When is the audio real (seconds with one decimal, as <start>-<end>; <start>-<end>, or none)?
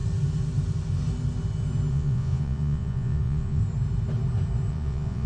0.0-1.9; 3.6-4.7